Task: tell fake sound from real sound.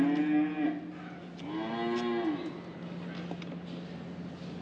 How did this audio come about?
real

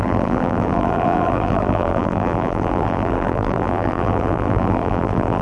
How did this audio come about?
fake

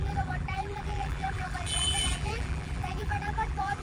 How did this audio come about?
fake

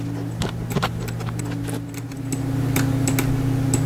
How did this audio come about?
real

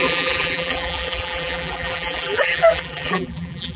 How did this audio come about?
fake